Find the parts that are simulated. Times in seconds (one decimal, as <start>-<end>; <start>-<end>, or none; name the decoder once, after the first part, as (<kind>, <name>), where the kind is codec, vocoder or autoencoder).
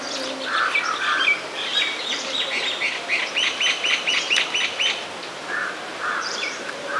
1.7-2.2 (vocoder, BigVGAN v2); 5.6-7.0